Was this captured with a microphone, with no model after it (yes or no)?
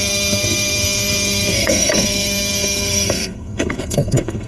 no